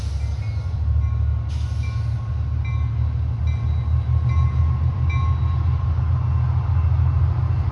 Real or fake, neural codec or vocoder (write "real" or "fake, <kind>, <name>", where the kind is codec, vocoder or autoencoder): real